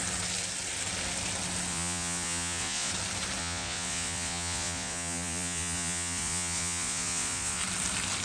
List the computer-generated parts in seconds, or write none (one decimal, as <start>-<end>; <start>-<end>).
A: 1.7-2.9; 3.4-7.6